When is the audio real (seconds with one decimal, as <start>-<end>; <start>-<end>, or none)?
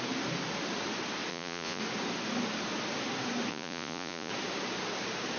0.0-1.3; 1.8-3.5; 4.3-5.4